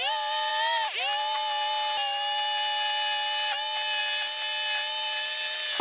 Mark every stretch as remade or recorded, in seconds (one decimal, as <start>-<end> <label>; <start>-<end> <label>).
0.0-5.8 recorded